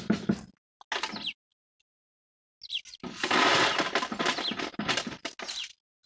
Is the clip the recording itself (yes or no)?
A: yes